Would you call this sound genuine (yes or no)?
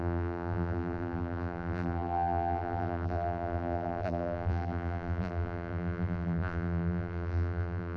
no